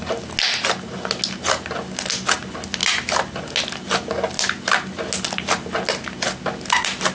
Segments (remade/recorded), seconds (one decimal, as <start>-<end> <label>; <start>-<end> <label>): 0.0-7.1 recorded